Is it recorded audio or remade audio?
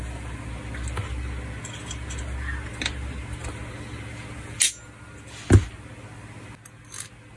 recorded